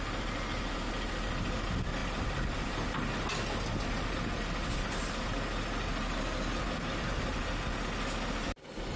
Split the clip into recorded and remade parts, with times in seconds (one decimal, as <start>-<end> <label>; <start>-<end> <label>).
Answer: 0.0-9.0 recorded